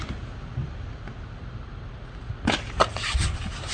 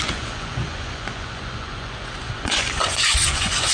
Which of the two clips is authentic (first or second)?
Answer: first